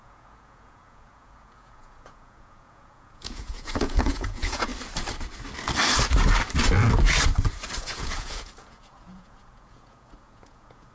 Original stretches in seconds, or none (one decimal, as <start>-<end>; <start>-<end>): 4.7-7.8